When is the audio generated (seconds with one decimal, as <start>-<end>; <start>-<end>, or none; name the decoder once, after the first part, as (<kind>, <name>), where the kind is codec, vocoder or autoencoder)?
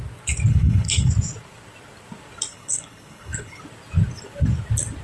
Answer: 0.5-1.1 (codec, HILCodec); 2.5-3.6